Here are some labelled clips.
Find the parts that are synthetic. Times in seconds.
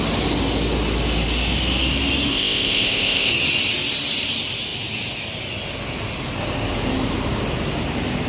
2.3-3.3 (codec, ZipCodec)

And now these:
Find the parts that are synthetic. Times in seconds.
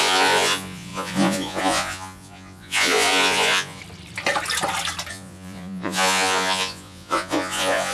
0.0-3.8 (vocoder, Vocos); 5.1-7.9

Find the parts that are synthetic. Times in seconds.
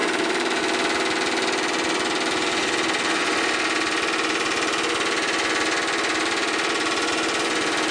0.0-0.6 (vocoder, BigVGAN v2)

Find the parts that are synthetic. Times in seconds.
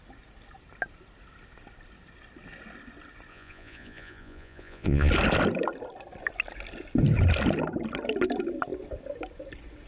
3.3-5.1 (vocoder, Vocos)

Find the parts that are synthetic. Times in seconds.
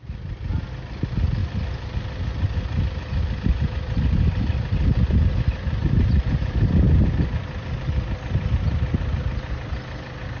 none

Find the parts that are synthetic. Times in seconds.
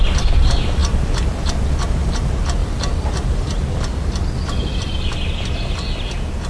0.8-1.4 (vocoder, BigVGAN v2); 2.6-4.9